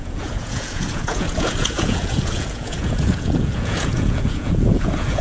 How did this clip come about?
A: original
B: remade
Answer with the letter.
B